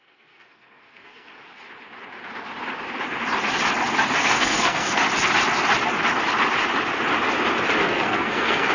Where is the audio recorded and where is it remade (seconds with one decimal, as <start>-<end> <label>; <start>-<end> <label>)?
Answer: 0.0-1.3 remade; 1.3-4.2 recorded; 4.2-5.0 remade; 5.0-7.8 recorded; 7.8-8.7 remade